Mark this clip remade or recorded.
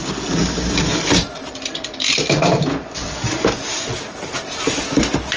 recorded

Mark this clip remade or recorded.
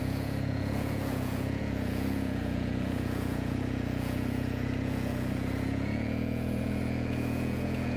remade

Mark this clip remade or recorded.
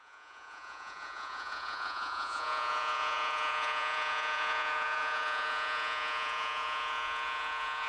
remade